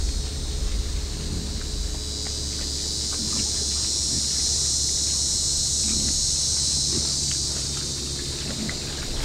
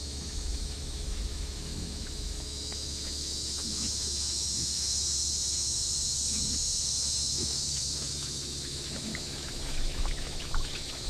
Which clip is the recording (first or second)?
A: first